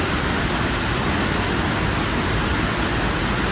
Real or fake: real